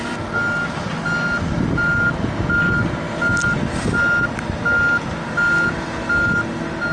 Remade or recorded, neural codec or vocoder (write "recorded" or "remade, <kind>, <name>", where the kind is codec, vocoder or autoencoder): recorded